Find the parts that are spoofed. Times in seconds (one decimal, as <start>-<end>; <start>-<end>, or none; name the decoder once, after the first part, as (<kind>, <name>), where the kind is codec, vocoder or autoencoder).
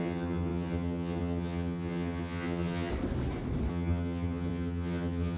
0.0-2.9 (vocoder, HiFi-GAN); 3.7-5.4